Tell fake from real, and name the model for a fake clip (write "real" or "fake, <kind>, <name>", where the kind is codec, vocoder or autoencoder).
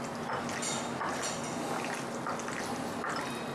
real